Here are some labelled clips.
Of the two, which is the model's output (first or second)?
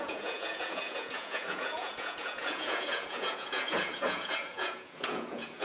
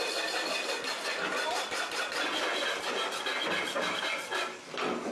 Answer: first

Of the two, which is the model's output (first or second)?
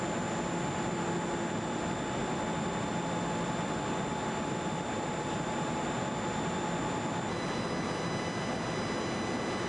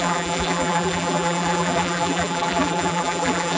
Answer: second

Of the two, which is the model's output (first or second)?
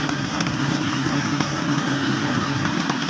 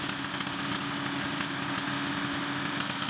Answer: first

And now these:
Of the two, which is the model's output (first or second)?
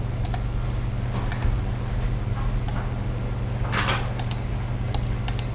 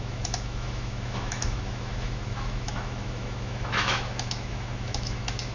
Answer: second